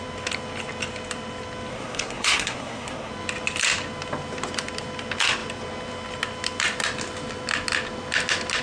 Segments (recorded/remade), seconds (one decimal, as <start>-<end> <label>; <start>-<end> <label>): 0.0-1.7 recorded; 1.7-3.1 remade; 3.1-8.6 recorded